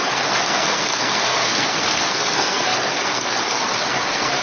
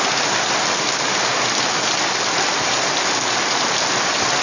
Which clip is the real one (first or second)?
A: second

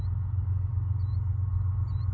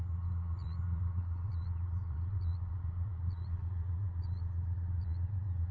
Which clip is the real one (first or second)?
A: first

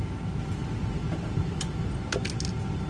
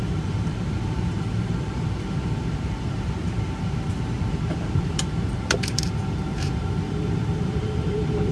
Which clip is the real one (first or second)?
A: first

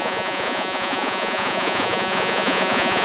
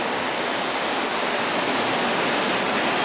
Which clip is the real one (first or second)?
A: second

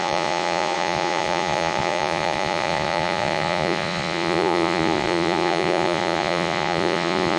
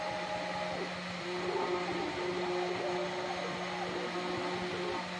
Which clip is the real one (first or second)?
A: second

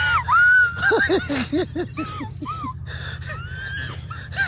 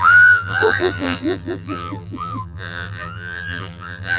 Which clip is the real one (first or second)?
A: first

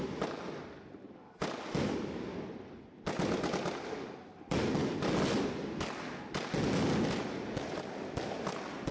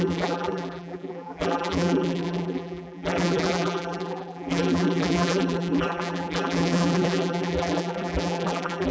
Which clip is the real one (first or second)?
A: first